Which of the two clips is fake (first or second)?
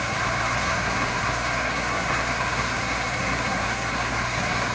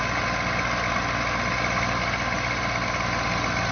first